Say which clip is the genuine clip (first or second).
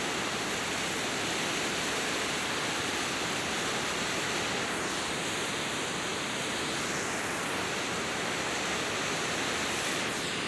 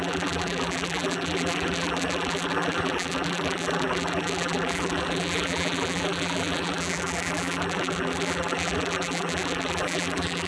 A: first